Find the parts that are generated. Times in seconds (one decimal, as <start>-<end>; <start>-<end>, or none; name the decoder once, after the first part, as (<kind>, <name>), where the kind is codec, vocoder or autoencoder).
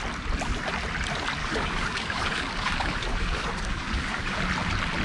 1.4-4.4 (codec, DAC)